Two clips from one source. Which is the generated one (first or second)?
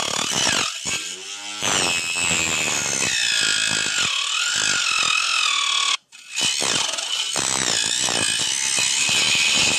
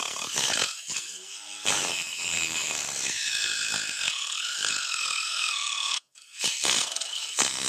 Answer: second